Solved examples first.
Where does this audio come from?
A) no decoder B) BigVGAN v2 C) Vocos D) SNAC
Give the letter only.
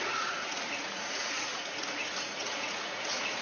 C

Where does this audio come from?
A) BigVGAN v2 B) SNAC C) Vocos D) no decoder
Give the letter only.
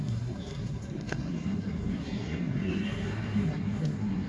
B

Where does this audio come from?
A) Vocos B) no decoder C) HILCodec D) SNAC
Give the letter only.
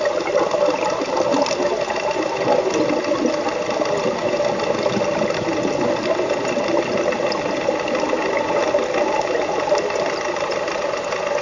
B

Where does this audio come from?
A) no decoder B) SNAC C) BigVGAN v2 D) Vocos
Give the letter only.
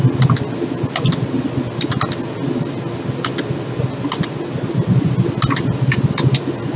A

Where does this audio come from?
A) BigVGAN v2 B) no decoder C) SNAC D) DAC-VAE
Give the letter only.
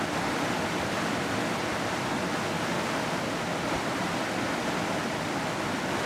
B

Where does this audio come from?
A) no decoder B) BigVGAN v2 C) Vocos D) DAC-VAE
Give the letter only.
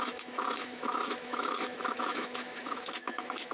D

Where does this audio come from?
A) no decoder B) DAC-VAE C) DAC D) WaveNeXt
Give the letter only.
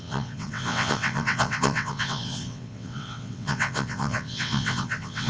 D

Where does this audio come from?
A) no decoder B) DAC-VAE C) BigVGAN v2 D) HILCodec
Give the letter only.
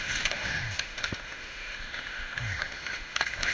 B